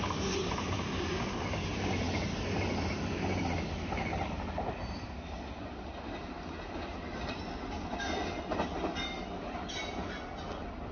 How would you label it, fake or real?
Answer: real